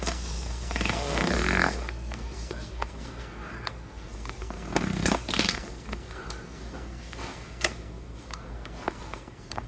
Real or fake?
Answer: fake